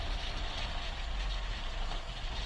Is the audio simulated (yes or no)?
no